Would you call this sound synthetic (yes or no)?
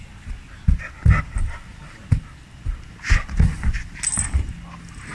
no